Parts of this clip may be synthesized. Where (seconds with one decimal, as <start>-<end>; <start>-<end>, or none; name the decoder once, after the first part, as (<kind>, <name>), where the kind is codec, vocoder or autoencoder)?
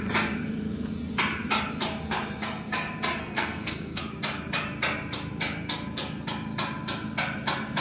3.2-4.0 (codec, SNAC)